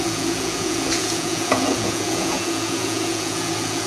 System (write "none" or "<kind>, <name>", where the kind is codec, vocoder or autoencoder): vocoder, Vocos